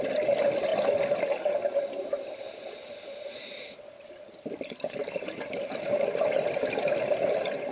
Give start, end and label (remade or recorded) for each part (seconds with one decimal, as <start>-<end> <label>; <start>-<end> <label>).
0.0-0.7 remade; 0.7-3.6 recorded; 3.6-7.7 remade